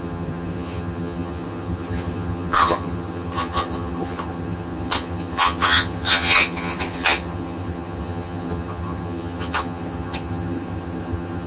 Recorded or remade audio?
remade